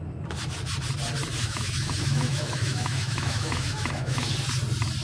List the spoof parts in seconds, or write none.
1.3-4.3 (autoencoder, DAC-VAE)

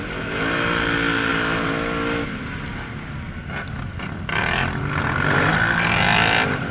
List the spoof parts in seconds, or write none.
none

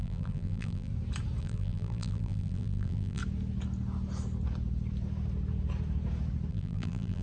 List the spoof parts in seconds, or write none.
0.0-0.9 (vocoder, BigVGAN v2); 1.4-3.2; 6.5-7.2

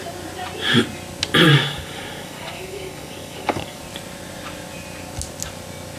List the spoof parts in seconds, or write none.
1.5-3.8 (codec, DAC)

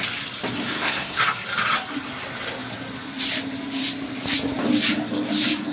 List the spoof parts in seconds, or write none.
0.6-1.2 (codec, SNAC)